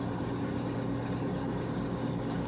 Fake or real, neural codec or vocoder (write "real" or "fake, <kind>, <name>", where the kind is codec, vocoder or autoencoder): fake, codec, DAC